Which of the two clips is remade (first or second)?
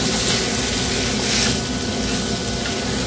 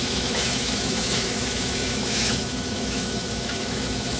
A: second